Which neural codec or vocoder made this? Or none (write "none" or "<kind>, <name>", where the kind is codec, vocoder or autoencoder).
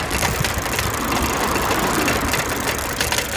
none